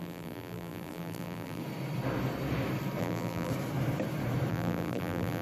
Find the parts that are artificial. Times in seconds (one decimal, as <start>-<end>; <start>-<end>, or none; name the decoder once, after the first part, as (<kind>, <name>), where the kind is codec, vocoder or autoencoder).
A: 0.0-1.6 (vocoder, BigVGAN v2); 3.0-3.5; 4.5-5.4